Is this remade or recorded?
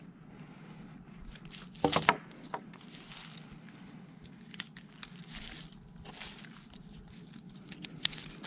recorded